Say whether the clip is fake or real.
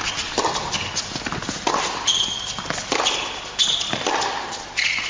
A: real